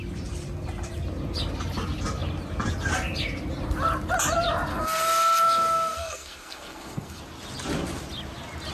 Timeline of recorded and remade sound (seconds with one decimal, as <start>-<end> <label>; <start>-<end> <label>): 0.0-4.7 recorded; 4.7-7.2 remade; 7.2-8.7 recorded